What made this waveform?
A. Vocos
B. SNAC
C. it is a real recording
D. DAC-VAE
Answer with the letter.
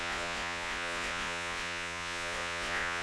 A